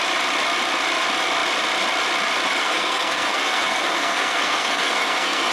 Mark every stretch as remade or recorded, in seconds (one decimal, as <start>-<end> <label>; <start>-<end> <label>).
0.0-2.6 recorded; 2.6-5.5 remade